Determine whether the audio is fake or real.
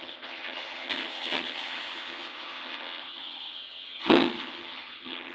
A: fake